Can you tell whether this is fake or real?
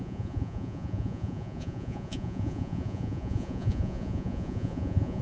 fake